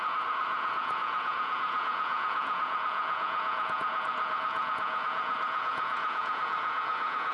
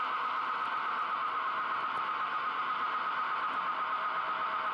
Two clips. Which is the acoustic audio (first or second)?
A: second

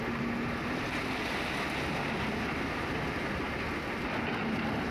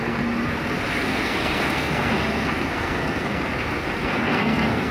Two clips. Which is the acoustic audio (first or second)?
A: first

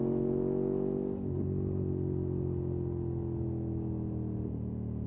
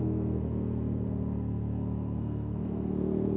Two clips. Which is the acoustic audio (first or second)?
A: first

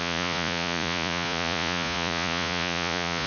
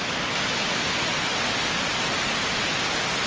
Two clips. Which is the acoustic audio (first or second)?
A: second